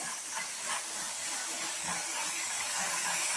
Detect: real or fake fake